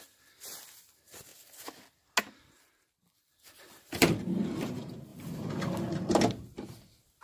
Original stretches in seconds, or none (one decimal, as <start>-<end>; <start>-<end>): 1.3-2.2